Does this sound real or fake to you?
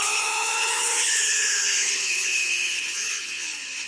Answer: fake